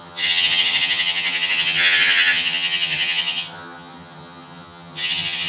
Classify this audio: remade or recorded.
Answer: remade